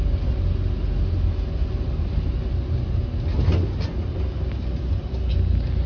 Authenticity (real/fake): real